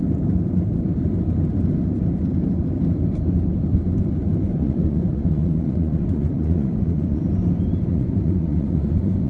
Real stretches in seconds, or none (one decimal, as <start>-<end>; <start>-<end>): 0.0-4.5; 7.2-7.9